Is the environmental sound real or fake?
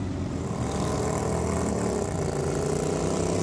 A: real